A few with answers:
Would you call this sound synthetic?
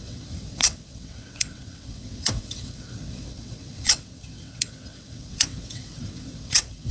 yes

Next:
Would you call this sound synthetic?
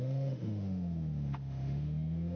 yes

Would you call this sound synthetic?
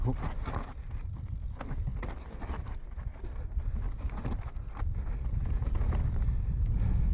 no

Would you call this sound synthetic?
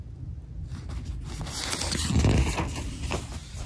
no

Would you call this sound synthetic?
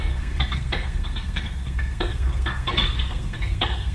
yes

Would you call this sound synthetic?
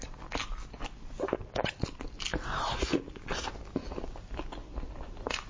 no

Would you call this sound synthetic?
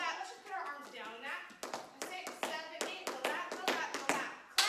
no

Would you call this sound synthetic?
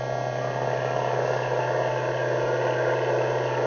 no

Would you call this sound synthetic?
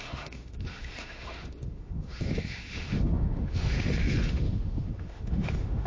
yes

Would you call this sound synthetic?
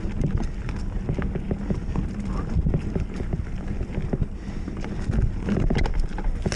no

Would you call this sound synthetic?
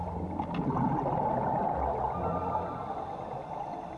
no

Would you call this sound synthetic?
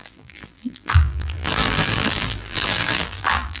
yes